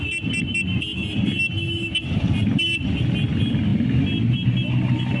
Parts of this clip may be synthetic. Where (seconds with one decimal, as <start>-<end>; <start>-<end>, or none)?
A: none